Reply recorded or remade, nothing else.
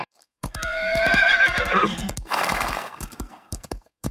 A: remade